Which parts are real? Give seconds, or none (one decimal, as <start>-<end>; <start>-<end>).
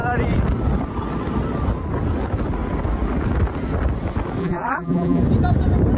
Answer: 0.0-4.4; 5.2-6.0